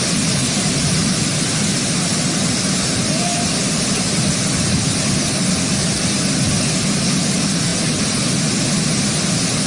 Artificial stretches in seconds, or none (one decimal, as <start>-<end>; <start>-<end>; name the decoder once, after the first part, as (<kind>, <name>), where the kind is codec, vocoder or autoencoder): none